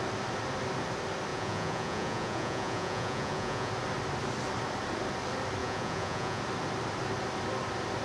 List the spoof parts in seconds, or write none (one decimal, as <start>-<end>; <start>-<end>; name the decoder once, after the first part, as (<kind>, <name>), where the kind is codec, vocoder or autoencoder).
1.3-3.7 (vocoder, Vocos); 5.6-6.4